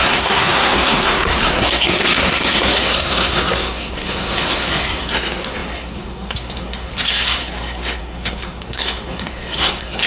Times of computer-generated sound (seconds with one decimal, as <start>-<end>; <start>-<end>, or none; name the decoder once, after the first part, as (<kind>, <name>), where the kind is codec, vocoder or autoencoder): 0.0-10.1 (codec, SNAC)